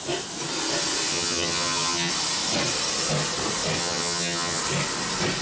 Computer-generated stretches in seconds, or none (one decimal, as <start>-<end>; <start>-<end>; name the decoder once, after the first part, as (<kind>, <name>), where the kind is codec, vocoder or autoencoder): 1.1-2.1 (vocoder, HiFi-GAN); 3.8-4.6